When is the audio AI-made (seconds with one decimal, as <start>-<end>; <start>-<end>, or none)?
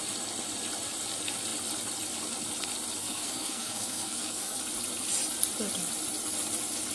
3.0-4.6